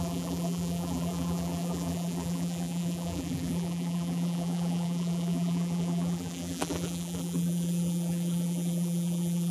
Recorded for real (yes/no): no